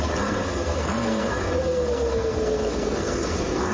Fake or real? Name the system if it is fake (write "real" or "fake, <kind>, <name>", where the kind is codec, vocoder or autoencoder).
fake, codec, SNAC